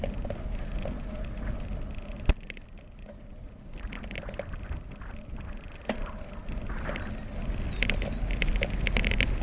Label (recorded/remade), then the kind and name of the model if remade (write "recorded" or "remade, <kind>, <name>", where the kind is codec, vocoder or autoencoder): recorded